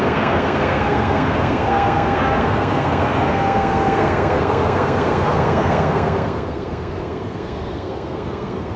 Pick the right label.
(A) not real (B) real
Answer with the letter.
A